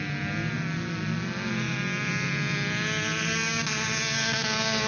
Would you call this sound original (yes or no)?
yes